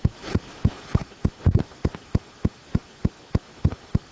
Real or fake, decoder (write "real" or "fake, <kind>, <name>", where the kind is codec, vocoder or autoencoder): real